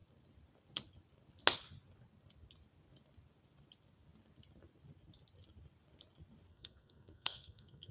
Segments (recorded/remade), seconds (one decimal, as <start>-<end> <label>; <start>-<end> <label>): 0.0-6.5 recorded; 6.5-7.9 remade